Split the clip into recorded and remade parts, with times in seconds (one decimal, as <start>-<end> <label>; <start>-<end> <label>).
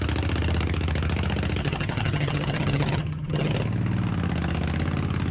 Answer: 0.0-1.6 recorded; 1.6-3.5 remade; 3.5-5.3 recorded